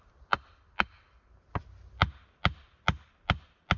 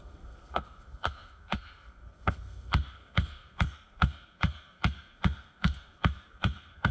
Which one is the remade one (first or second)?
second